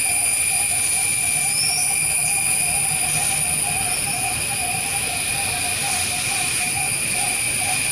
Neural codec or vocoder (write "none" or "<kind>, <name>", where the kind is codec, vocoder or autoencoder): none